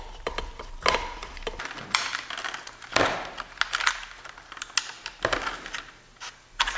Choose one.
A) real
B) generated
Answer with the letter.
A